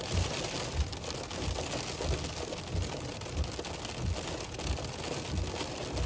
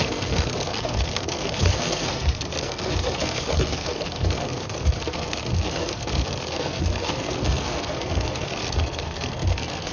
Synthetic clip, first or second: second